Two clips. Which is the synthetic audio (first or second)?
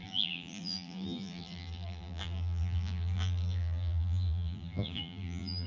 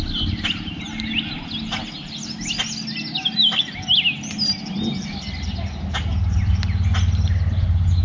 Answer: first